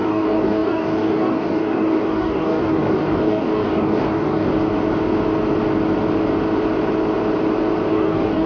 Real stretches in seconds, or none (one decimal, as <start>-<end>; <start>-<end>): 4.5-7.9